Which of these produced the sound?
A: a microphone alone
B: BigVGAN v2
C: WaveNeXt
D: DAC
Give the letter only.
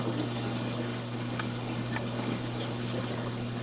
D